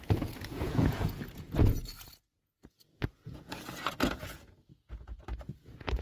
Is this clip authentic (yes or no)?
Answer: no